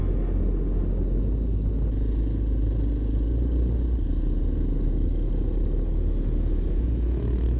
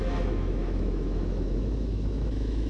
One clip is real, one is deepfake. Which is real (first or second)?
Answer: first